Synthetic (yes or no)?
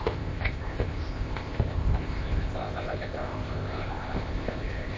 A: yes